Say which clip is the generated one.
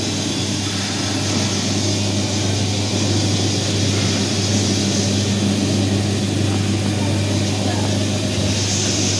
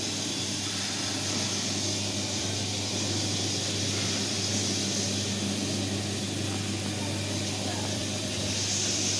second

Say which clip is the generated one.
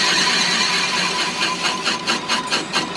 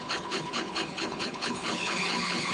second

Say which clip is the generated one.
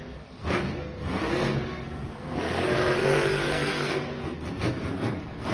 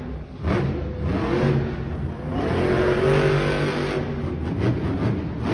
first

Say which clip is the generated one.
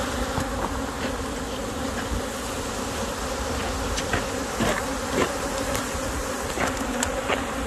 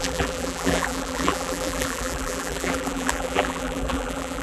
second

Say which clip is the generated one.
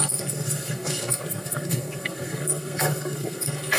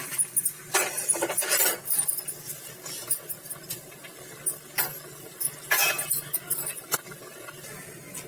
first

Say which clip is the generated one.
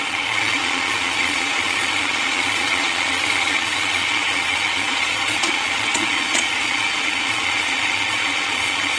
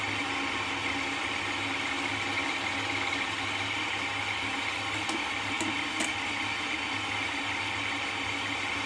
first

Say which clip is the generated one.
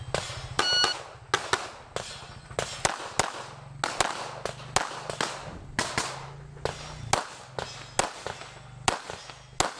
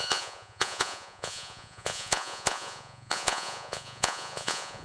second